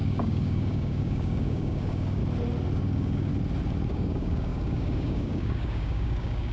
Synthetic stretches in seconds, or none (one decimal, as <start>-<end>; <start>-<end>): 0.0-2.2; 2.8-3.3; 3.9-6.5